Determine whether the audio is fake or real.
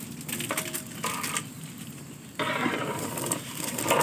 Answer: fake